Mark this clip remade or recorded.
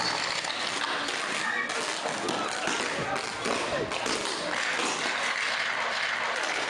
recorded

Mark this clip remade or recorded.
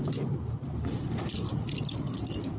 recorded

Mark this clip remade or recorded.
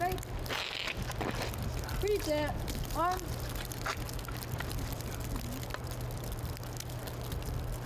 recorded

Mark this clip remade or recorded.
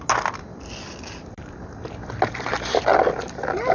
recorded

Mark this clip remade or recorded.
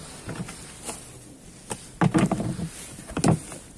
recorded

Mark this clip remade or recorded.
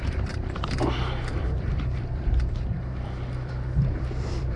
remade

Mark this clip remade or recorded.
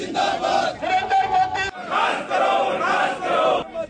recorded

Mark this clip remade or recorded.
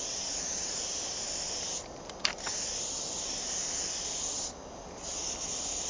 recorded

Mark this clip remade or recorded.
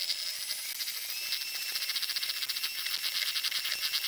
recorded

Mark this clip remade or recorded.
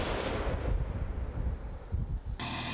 recorded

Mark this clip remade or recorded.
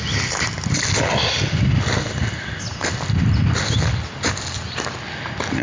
recorded